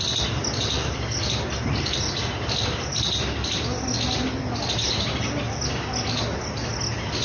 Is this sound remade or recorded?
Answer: recorded